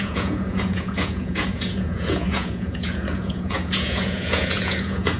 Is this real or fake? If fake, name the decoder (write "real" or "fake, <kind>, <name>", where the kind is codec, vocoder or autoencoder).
fake, vocoder, Vocos